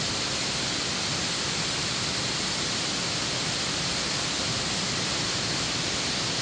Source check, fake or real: real